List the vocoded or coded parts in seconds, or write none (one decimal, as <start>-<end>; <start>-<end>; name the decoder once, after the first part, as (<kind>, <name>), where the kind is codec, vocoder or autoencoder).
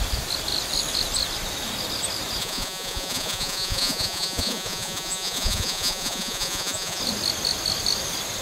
2.4-7.0 (vocoder, Vocos)